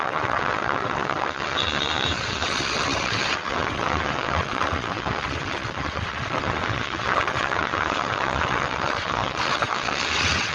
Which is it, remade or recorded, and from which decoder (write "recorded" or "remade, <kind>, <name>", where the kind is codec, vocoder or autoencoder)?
remade, vocoder, WaveNeXt